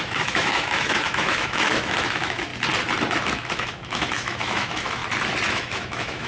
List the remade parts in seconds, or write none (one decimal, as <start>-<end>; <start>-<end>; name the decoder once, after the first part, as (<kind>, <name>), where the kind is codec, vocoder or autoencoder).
0.0-2.5 (autoencoder, DAC-VAE); 3.2-5.0; 5.5-6.3